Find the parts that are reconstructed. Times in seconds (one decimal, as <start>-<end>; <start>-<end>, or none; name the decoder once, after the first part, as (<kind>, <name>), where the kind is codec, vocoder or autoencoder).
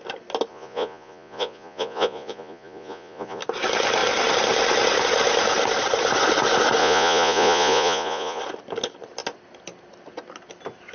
0.5-3.4 (vocoder, Vocos); 6.8-8.4